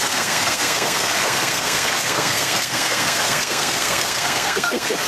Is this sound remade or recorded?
remade